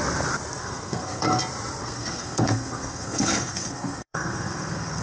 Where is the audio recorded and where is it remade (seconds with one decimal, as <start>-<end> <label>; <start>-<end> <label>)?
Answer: 0.0-0.6 recorded; 0.6-1.4 remade; 1.4-1.8 recorded; 1.8-5.0 remade